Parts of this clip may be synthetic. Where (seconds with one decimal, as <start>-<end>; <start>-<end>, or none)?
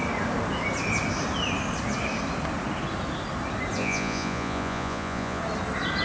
3.8-5.4